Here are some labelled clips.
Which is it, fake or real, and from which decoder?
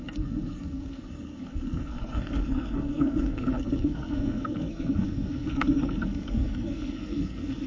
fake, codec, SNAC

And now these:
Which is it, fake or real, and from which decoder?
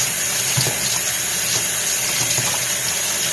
real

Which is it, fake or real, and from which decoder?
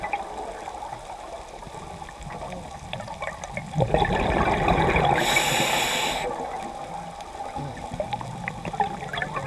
real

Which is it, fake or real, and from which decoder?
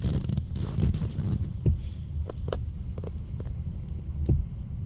real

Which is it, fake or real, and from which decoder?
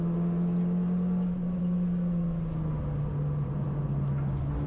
real